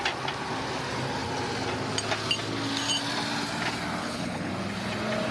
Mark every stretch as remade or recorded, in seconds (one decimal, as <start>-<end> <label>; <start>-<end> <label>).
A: 0.0-4.0 recorded; 4.0-4.5 remade; 4.5-5.3 recorded